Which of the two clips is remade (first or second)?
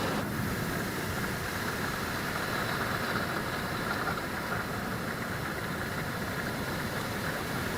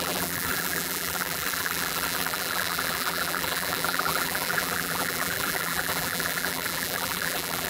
second